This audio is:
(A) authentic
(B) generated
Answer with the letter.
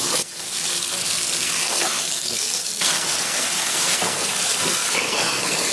B